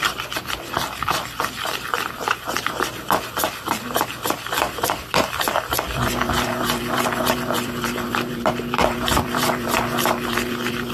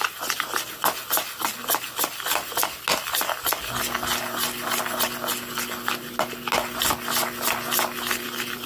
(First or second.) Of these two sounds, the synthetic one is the first